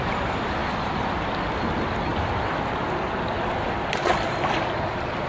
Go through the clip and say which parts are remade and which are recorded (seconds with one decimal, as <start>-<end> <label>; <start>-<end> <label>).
0.0-5.3 recorded

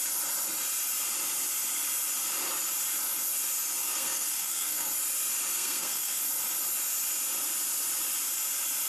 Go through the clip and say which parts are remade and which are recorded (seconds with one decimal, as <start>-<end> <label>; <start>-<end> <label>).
0.0-3.8 recorded; 3.8-4.9 remade; 4.9-5.5 recorded; 5.5-6.2 remade; 6.2-8.9 recorded

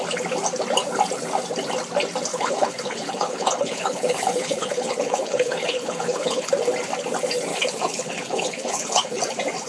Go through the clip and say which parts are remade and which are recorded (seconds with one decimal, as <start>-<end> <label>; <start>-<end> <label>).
0.0-2.3 recorded; 2.3-6.5 remade; 6.5-7.5 recorded; 7.5-9.2 remade; 9.2-9.7 recorded

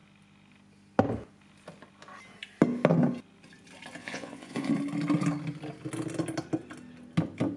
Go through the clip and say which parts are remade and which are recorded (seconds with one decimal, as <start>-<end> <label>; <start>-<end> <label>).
0.0-4.0 recorded; 4.0-4.7 remade; 4.7-7.6 recorded

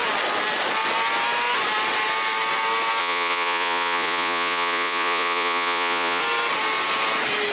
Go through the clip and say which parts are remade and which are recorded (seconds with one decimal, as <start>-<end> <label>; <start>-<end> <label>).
0.0-3.0 recorded; 3.0-6.2 remade; 6.2-7.5 recorded

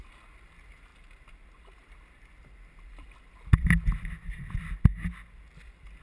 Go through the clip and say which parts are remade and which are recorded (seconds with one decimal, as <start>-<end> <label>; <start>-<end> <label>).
0.0-6.0 recorded

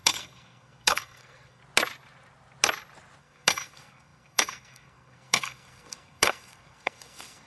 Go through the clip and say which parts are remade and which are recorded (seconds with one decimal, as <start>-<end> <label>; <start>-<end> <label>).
0.0-1.6 remade; 1.6-3.2 recorded; 3.2-7.5 remade

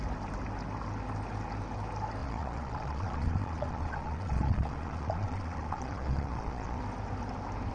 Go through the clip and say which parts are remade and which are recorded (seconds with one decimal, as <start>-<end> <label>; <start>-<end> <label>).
0.0-2.2 recorded; 2.2-6.8 remade; 6.8-7.7 recorded